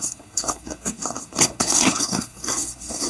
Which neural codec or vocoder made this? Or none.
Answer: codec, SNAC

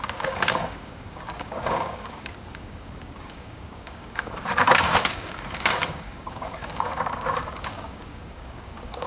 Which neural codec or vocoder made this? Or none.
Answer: codec, DAC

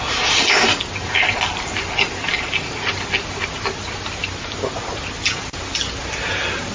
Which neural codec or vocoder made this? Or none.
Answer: none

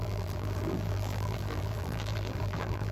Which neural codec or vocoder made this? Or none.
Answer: vocoder, BigVGAN v2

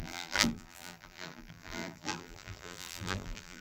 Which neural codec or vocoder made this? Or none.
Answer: vocoder, BigVGAN v2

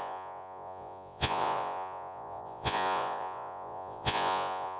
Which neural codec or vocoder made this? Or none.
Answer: vocoder, Vocos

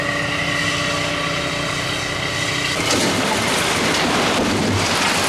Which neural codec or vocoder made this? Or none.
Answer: none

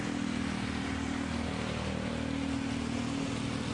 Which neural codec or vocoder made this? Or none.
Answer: none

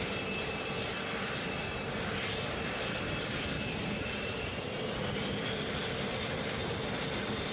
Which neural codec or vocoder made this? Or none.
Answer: none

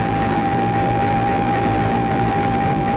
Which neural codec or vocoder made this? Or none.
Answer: vocoder, BigVGAN v2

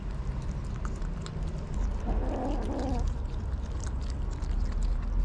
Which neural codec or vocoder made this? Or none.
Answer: none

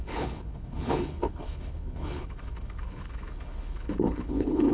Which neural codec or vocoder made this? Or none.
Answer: codec, HILCodec